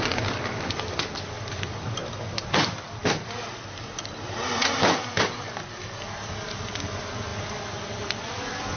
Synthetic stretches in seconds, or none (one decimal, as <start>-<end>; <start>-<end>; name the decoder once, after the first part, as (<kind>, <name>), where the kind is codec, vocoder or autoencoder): none